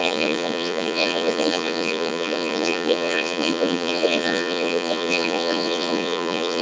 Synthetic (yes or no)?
yes